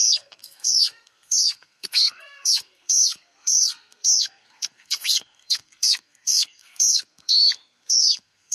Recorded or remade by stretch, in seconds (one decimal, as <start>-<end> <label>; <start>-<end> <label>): 0.0-8.5 remade